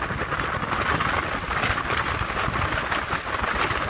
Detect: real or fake real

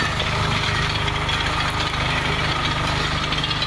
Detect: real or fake real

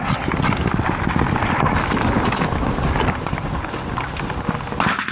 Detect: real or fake real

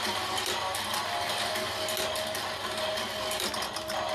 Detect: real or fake real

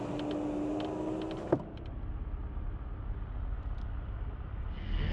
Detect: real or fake real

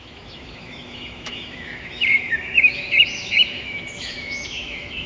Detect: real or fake fake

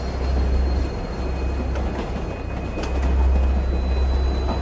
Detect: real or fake real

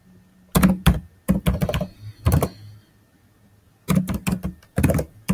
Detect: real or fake real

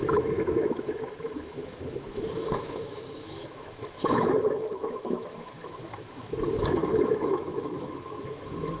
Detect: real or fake fake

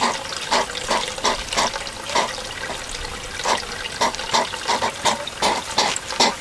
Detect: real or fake real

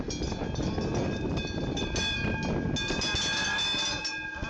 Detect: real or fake real